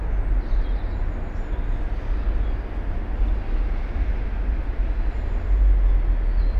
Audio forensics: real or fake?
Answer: real